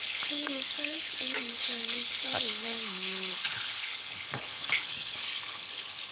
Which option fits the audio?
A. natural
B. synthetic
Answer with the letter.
B